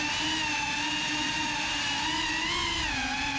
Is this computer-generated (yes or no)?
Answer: no